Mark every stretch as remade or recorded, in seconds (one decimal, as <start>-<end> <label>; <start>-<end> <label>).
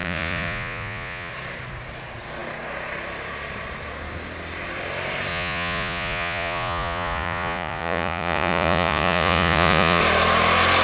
0.0-1.3 remade; 1.3-5.3 recorded; 5.3-10.0 remade; 10.0-10.8 recorded